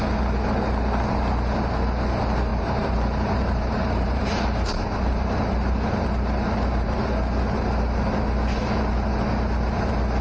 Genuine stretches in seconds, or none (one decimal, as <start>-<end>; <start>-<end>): 0.0-2.5; 6.9-10.2